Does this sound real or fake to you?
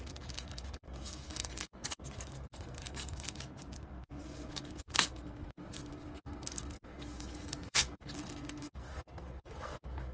fake